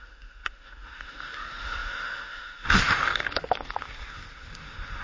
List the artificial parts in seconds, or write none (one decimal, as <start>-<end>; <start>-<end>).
0.0-5.0